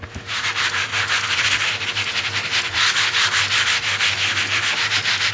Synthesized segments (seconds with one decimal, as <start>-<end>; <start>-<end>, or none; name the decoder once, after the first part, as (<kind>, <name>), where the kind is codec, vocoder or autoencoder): none